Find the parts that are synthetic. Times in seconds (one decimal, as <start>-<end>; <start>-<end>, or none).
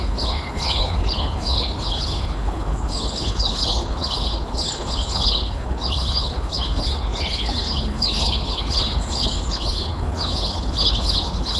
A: 0.0-11.6